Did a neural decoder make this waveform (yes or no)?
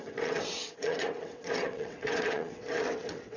yes